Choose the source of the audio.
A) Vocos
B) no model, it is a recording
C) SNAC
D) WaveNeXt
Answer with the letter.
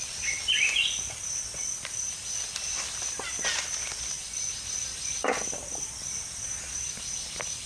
B